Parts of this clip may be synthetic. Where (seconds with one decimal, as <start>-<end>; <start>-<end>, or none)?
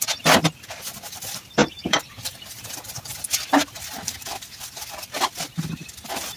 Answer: 1.6-2.7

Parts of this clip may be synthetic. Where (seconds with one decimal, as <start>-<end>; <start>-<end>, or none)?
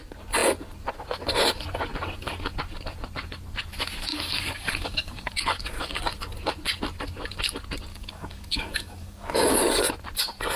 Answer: 4.1-6.0; 7.9-9.9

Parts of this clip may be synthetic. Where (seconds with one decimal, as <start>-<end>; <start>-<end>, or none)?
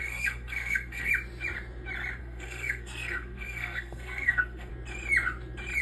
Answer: 0.0-1.1; 2.2-4.7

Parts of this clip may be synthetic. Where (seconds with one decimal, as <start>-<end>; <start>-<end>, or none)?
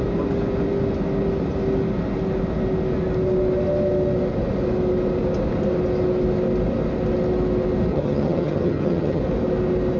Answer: 7.9-9.2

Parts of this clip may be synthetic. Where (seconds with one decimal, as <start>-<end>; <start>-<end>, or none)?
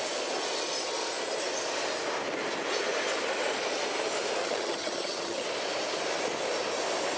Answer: 4.4-5.4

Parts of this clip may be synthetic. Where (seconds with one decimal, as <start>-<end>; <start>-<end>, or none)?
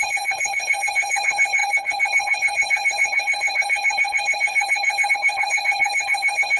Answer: 0.0-6.6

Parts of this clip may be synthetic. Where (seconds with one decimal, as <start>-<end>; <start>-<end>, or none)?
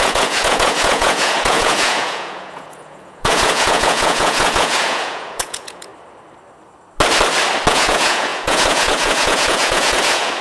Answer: 0.0-5.9; 7.7-10.4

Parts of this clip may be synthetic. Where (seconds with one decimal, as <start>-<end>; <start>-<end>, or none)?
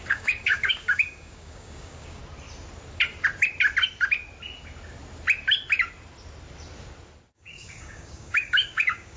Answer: 0.0-2.2; 7.3-9.2